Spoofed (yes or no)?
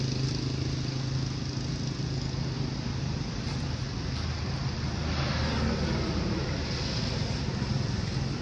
no